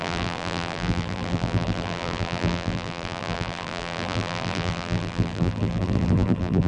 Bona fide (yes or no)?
no